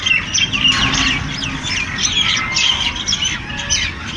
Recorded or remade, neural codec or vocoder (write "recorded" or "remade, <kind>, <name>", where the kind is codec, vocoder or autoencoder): recorded